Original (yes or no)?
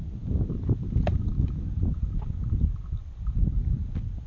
yes